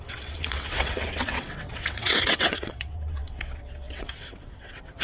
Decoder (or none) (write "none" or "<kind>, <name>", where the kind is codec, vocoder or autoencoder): vocoder, WaveNeXt